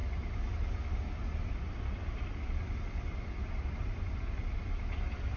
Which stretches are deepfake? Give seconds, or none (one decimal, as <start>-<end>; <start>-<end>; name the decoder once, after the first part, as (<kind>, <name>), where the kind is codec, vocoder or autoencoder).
none